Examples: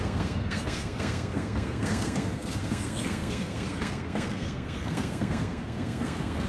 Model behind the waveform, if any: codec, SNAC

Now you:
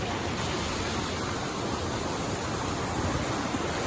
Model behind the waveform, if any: none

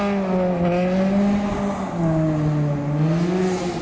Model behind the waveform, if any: none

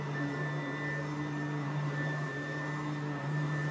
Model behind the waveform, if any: none